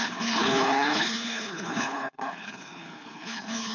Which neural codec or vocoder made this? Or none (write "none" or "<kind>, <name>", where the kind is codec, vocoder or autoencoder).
codec, HILCodec